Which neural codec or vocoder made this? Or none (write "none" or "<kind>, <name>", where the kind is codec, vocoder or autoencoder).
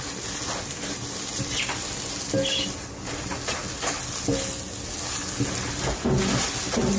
none